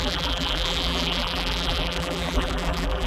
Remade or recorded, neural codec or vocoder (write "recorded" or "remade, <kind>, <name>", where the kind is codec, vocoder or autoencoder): remade, vocoder, BigVGAN v2